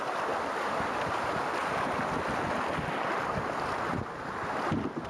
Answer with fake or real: real